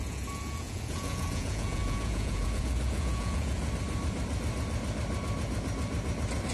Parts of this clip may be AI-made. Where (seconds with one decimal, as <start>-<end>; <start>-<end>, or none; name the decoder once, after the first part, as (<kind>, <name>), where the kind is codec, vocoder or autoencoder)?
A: 0.0-3.6 (vocoder, Vocos)